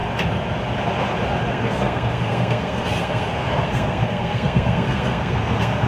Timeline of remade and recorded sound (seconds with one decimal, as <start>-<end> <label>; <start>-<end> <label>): 0.0-1.5 recorded; 1.5-5.9 remade